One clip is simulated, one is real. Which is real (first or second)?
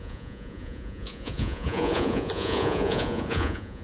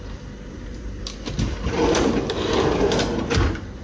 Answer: second